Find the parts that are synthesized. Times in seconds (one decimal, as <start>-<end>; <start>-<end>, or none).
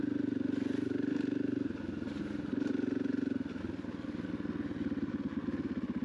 none